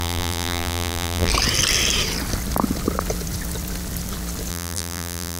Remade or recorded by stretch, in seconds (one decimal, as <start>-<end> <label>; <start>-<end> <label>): 0.0-1.3 remade; 1.3-4.5 recorded; 4.5-5.4 remade